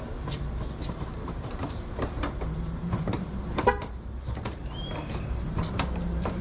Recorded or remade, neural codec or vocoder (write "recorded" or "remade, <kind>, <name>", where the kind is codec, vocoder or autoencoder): remade, vocoder, BigVGAN v2